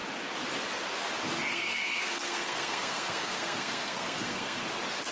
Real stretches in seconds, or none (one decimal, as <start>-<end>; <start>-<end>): 0.0-1.5; 4.6-5.1